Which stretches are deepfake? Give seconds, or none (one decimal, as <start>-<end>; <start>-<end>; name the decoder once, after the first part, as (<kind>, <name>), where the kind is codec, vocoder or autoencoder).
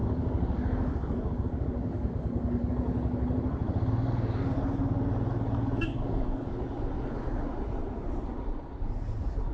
0.0-2.7 (codec, DAC); 5.9-6.6